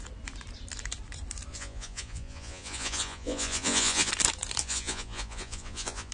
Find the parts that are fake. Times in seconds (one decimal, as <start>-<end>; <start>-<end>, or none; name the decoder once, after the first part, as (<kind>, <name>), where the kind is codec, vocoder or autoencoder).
1.5-4.1 (vocoder, Vocos); 4.6-6.1